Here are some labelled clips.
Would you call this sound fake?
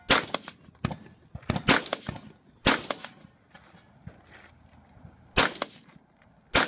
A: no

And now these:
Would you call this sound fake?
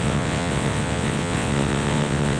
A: yes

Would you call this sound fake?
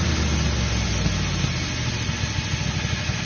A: no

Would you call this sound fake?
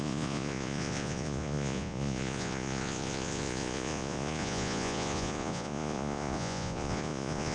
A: yes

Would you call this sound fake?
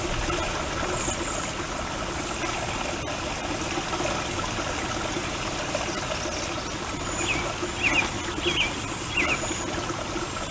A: no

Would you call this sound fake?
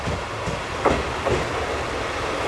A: no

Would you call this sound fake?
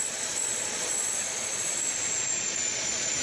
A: yes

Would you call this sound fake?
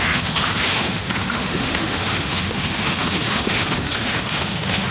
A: yes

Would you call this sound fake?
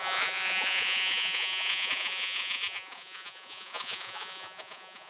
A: yes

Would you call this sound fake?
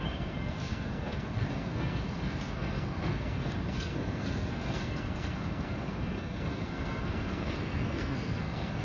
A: yes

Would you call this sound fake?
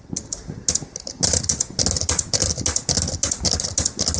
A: no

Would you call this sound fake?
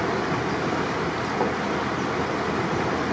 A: no